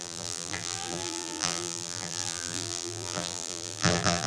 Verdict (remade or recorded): remade